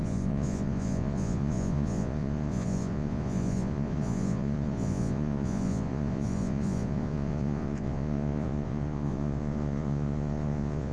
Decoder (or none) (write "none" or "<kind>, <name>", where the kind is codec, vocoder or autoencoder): vocoder, Vocos